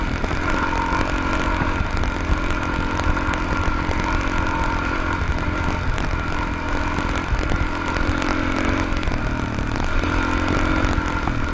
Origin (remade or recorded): recorded